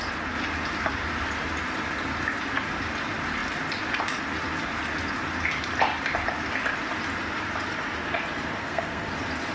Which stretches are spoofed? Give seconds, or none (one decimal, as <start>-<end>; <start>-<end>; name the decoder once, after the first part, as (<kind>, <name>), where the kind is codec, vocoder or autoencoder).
8.6-9.1 (codec, SNAC)